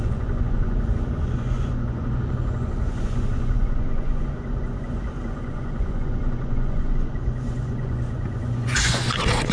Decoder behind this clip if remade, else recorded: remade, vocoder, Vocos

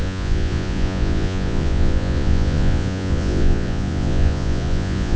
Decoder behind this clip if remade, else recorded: remade, vocoder, Vocos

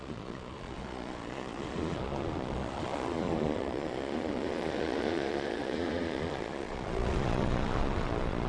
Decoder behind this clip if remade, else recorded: remade, vocoder, Vocos